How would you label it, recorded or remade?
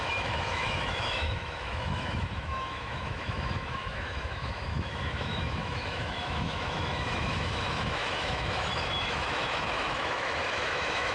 remade